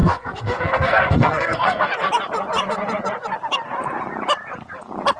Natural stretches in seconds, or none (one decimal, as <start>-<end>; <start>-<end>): 1.9-5.2